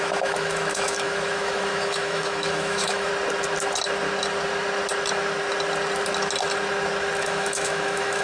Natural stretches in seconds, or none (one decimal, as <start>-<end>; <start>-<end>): 3.1-7.2